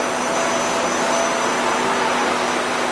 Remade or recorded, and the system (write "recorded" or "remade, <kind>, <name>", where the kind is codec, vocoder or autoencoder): recorded